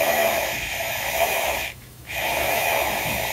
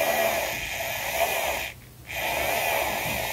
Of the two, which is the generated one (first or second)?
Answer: first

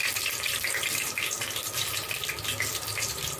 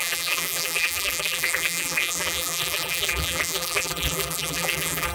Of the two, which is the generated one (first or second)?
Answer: second